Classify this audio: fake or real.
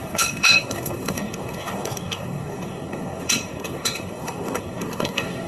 fake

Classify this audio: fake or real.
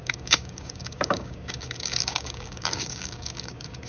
fake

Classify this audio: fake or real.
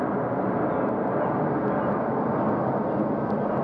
real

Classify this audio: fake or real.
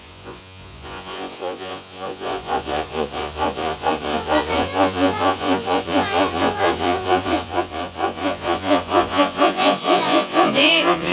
fake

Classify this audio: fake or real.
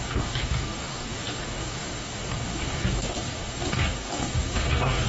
fake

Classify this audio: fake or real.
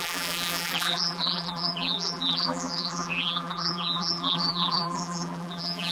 fake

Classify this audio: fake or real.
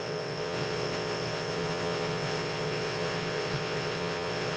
fake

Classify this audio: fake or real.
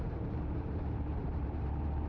fake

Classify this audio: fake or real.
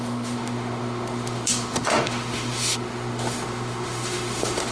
fake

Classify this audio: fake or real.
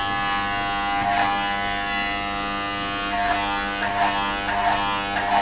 real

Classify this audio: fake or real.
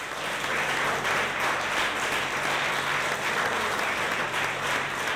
fake